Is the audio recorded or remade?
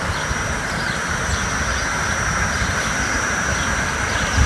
recorded